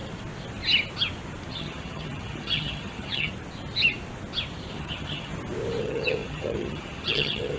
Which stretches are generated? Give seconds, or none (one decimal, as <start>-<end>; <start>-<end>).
1.5-3.3; 4.7-5.3; 5.8-7.6